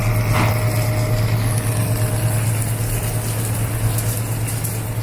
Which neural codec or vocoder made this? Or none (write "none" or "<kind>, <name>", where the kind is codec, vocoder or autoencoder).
none